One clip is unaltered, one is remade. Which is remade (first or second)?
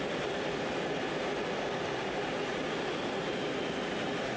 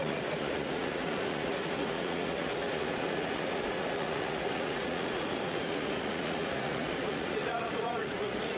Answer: second